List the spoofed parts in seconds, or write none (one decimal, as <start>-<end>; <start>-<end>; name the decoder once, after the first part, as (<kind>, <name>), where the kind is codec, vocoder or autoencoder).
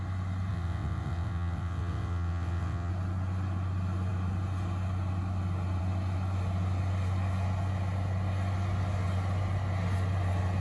0.5-2.9 (vocoder, WaveNeXt)